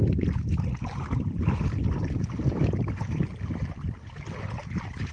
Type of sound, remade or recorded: recorded